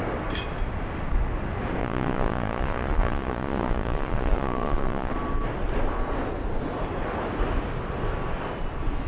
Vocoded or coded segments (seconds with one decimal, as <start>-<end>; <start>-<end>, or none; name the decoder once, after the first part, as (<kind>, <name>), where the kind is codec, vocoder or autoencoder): 1.8-5.1 (vocoder, Vocos)